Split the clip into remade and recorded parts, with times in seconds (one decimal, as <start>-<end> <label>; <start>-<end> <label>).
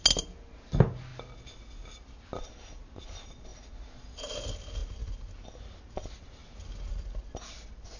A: 0.0-8.0 recorded